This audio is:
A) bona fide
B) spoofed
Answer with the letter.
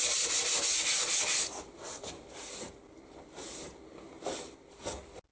A